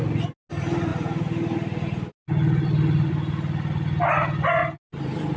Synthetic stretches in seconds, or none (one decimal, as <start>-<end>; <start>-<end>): none